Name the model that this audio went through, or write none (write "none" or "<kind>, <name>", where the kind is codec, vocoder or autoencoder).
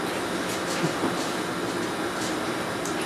none